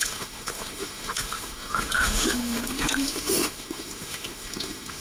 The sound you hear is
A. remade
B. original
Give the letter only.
A